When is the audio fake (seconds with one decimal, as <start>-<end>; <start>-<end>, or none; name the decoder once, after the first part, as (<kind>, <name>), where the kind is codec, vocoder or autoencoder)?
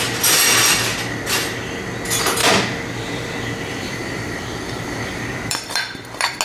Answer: 2.4-6.4 (vocoder, BigVGAN v2)